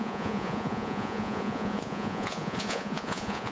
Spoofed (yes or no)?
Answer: yes